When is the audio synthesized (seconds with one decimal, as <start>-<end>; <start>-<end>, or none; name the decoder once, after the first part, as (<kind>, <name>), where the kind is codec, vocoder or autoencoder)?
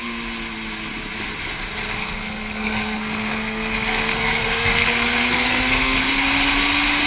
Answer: 2.0-6.0 (codec, SNAC)